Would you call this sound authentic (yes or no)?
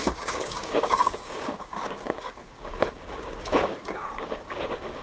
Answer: no